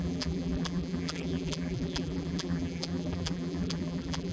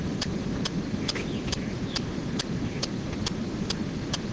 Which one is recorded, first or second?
second